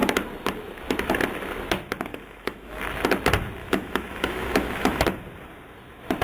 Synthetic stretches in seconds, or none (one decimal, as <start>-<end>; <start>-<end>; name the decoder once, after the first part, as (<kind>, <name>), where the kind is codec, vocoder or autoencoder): 2.1-2.8 (autoencoder, DAC-VAE); 3.6-5.0